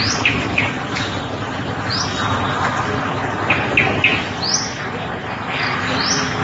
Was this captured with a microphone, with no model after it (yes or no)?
yes